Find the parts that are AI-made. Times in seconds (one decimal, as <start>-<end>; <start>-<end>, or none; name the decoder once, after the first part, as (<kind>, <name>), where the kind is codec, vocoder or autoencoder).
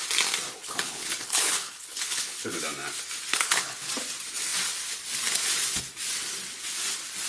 0.6-2.6 (codec, HILCodec); 3.3-3.9